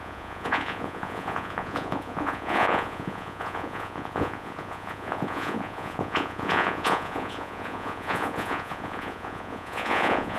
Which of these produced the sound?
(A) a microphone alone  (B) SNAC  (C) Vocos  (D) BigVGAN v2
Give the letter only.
C